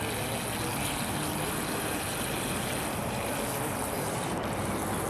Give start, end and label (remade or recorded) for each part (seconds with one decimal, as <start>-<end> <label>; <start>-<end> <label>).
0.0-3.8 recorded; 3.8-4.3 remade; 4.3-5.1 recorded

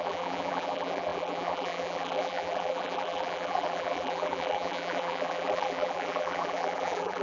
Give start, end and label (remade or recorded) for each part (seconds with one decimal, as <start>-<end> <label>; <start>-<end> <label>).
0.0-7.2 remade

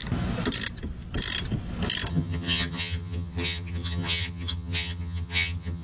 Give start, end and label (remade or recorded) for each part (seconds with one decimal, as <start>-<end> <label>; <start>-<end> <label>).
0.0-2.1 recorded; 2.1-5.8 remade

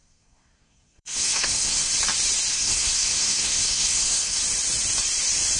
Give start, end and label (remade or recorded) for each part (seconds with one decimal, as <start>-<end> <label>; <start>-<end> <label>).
0.0-1.9 remade; 1.9-2.5 recorded; 2.5-4.4 remade; 4.4-5.6 recorded